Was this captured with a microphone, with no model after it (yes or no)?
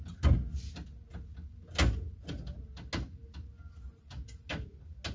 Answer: yes